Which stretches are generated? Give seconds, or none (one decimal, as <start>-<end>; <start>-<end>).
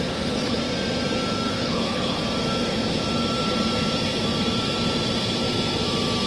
0.0-0.6; 1.5-2.2